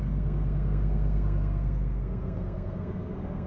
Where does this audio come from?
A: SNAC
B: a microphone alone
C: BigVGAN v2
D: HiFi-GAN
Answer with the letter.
A